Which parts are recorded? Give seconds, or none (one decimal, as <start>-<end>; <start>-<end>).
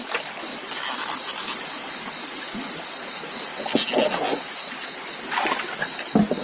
0.0-0.5; 2.0-6.4